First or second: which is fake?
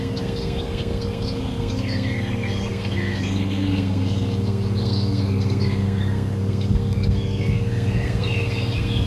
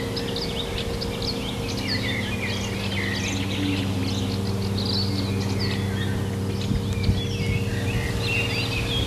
first